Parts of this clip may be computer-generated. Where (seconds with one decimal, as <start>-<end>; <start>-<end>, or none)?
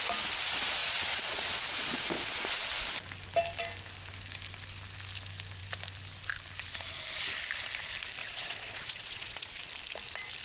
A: 0.8-2.7; 8.2-9.6